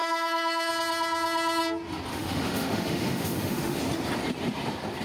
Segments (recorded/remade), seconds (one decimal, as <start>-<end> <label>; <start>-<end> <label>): 0.0-0.7 remade; 0.7-2.1 recorded; 2.1-3.8 remade; 3.8-5.0 recorded